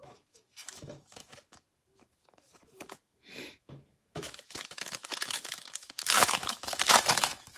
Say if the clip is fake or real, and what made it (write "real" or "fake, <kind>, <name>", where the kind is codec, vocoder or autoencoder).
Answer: fake, autoencoder, DAC-VAE